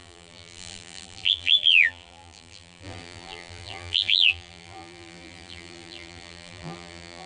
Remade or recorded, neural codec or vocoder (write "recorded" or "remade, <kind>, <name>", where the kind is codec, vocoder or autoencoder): remade, vocoder, BigVGAN v2